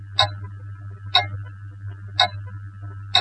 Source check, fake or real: real